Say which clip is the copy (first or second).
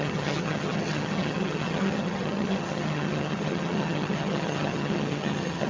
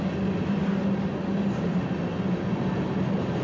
first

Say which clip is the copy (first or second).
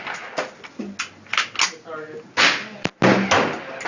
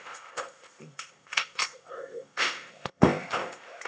second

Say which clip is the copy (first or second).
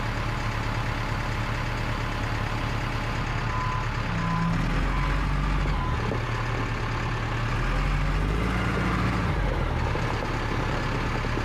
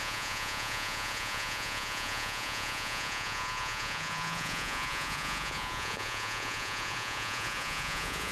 second